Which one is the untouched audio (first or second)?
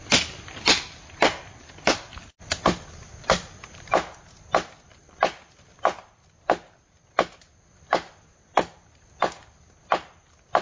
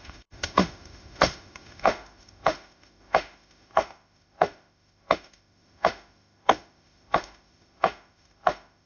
first